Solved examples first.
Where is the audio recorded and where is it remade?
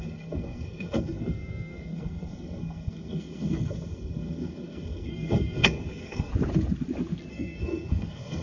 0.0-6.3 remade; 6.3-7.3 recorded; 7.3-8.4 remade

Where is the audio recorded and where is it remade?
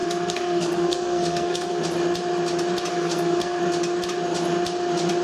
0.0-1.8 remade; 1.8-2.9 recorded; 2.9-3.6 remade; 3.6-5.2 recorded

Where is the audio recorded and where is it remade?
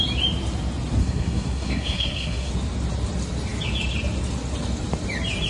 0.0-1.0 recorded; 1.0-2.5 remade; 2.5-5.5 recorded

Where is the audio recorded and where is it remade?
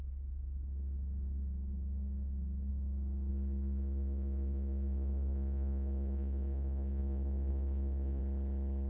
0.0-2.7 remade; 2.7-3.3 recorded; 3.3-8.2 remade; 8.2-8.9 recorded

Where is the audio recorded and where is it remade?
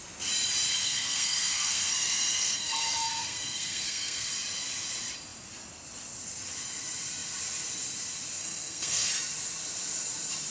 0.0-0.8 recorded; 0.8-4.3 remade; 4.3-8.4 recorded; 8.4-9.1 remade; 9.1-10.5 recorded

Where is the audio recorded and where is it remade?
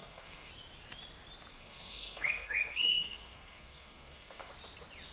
0.0-0.5 remade; 0.5-1.5 recorded; 1.5-4.5 remade; 4.5-5.1 recorded